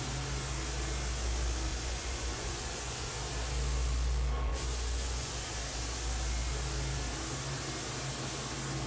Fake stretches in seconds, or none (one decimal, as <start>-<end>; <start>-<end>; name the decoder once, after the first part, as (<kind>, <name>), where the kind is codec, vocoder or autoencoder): 1.7-3.1 (vocoder, Vocos); 4.5-5.5

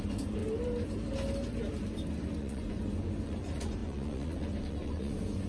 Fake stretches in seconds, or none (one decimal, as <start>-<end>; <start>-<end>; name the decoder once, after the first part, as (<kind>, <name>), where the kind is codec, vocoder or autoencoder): 0.0-0.4 (vocoder, Vocos); 2.4-5.5

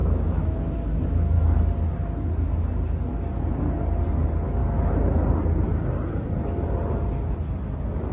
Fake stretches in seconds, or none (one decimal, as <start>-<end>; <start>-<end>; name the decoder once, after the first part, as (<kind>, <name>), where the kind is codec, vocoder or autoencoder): 0.0-1.6 (autoencoder, DAC-VAE)

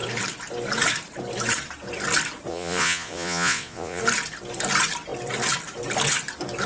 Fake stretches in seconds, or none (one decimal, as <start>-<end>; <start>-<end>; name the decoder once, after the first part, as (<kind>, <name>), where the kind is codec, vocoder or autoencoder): 2.5-4.0 (vocoder, Vocos)